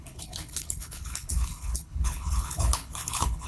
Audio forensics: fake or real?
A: fake